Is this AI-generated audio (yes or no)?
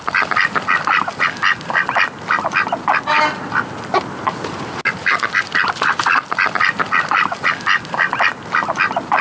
no